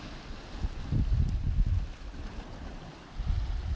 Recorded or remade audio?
recorded